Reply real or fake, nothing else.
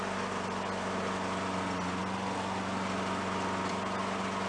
real